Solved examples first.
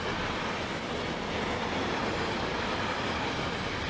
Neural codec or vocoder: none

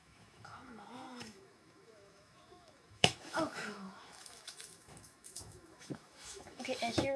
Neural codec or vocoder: autoencoder, DAC-VAE